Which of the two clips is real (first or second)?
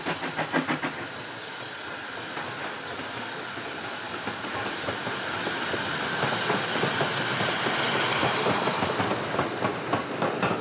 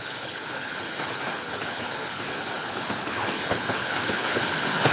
first